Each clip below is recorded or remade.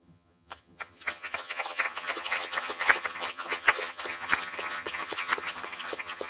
remade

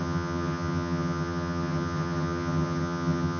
remade